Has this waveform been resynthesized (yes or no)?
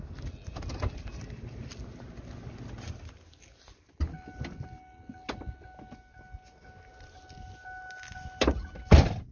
no